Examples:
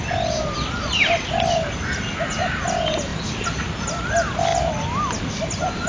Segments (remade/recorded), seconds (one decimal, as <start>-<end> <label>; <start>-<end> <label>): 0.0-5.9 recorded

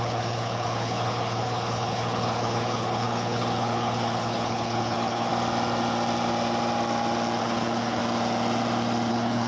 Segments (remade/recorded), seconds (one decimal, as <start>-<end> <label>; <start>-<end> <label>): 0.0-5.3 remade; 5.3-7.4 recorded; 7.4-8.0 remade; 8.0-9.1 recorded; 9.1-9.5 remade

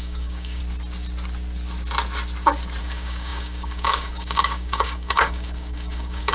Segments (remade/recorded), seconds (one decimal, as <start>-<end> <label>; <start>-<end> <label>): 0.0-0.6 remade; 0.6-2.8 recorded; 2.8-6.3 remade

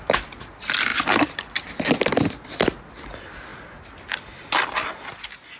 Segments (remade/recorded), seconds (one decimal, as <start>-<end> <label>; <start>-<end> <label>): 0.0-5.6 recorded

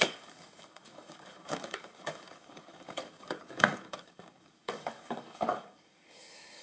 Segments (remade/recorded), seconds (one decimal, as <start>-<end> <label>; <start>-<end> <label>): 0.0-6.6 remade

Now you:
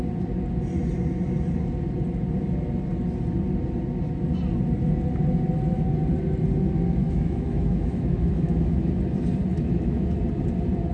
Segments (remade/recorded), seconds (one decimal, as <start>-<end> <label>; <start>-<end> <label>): 0.0-7.0 recorded; 7.0-8.9 remade; 8.9-9.5 recorded; 9.5-10.2 remade; 10.2-10.9 recorded